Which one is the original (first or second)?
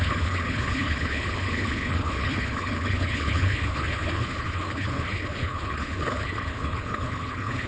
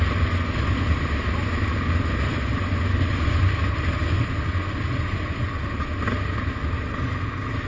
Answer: second